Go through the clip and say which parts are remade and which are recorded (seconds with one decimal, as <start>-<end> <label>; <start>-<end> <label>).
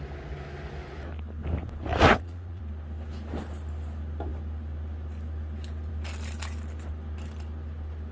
0.0-1.9 recorded; 1.9-2.6 remade; 2.6-8.1 recorded